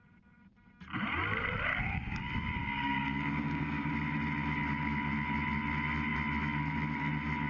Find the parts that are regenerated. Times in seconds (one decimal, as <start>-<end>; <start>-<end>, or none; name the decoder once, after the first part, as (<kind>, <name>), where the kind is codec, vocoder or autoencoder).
1.7-2.2 (codec, DAC); 2.6-3.9